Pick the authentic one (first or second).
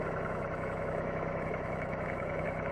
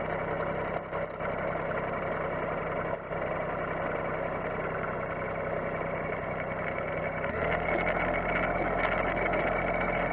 second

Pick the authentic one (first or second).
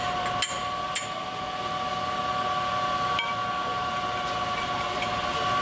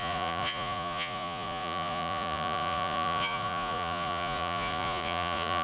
first